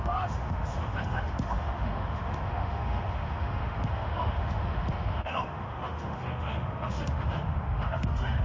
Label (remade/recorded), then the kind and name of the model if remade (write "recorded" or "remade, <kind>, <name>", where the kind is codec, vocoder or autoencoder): remade, autoencoder, DAC-VAE